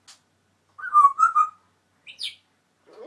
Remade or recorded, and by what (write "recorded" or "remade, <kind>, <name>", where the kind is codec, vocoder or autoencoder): recorded